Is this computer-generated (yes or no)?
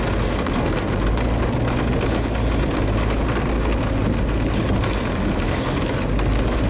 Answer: no